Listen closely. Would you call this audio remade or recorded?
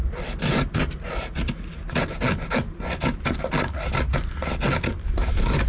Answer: recorded